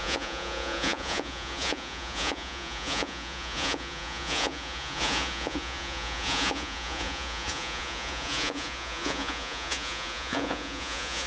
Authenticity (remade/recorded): remade